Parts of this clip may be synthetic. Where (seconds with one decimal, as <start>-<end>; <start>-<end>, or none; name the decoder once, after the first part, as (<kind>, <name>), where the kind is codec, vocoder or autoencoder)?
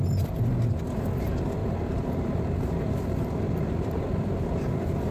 1.6-4.6 (vocoder, BigVGAN v2)